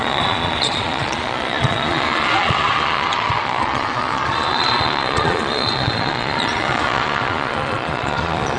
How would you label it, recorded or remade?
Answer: remade